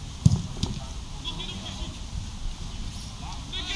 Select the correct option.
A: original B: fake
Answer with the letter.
A